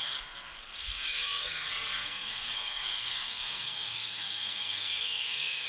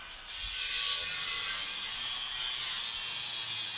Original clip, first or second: second